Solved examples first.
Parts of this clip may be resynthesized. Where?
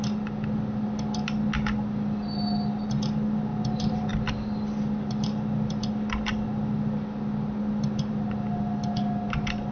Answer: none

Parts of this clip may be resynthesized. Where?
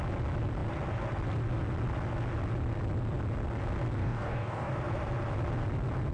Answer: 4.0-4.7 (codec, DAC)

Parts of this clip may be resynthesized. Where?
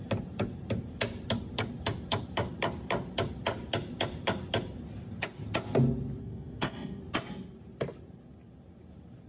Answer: 6.2-7.0 (codec, SNAC)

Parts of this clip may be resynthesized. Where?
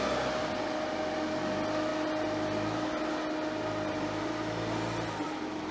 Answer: none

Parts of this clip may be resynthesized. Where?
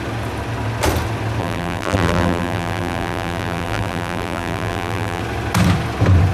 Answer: 1.4-5.2 (vocoder, BigVGAN v2)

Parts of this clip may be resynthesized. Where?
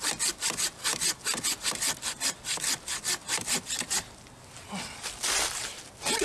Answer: none